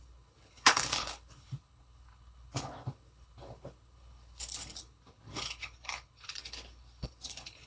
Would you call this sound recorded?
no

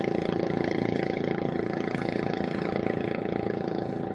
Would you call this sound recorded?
no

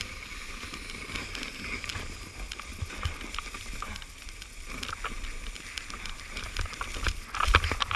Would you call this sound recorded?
yes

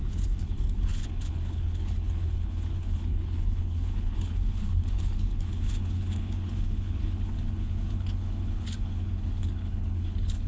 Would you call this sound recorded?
no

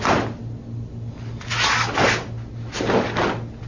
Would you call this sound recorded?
yes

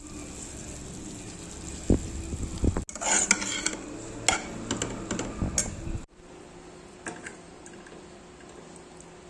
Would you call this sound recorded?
yes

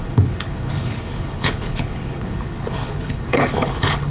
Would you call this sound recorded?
no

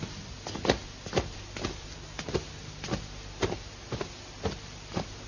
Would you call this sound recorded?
yes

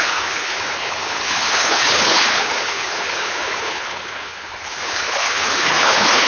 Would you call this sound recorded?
no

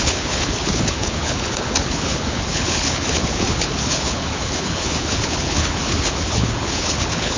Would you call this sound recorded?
no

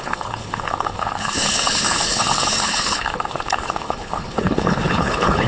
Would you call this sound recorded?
no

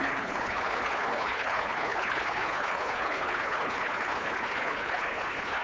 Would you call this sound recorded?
no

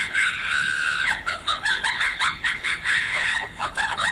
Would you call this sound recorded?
no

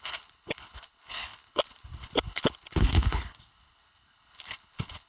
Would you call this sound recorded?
no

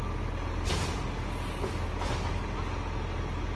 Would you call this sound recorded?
yes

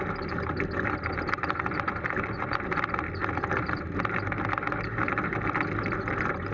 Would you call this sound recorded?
yes